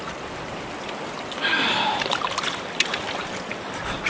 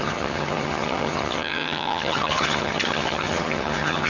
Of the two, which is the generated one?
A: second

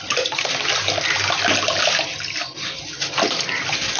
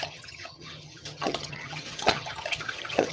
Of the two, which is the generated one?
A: second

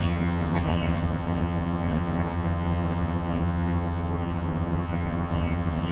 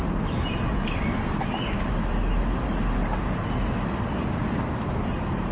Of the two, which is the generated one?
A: first